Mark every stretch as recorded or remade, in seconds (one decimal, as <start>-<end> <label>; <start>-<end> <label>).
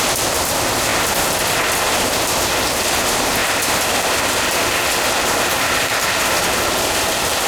0.0-7.5 recorded